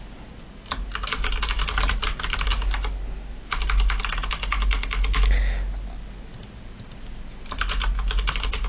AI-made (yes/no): no